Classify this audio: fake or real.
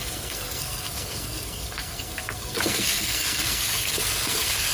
fake